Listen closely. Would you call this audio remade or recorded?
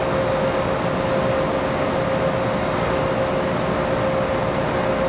recorded